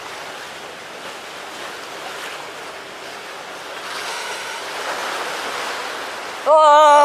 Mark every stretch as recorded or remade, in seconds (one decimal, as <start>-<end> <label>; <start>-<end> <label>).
0.0-4.1 recorded; 4.1-4.6 remade; 4.6-7.0 recorded